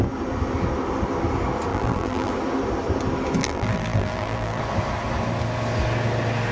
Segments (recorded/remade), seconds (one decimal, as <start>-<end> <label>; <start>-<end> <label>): 0.0-1.7 recorded; 1.7-2.3 remade; 2.3-3.4 recorded; 3.4-4.6 remade; 4.6-6.5 recorded